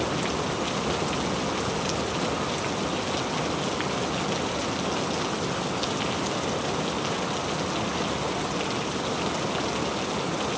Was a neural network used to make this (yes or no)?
no